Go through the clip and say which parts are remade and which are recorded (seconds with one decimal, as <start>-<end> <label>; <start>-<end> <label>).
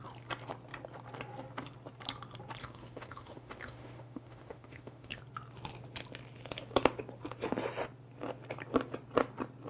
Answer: 0.0-2.6 recorded; 2.6-5.2 remade; 5.2-9.7 recorded